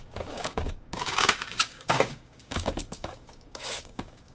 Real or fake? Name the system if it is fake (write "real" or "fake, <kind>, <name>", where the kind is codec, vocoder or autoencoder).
fake, codec, DAC